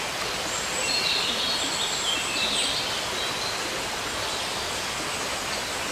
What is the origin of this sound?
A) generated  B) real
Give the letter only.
B